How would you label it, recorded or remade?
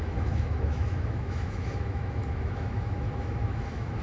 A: remade